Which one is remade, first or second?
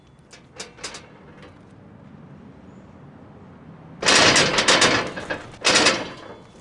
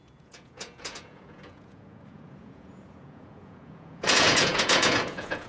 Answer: second